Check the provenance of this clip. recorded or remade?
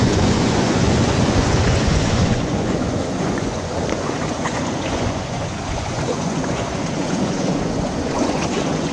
remade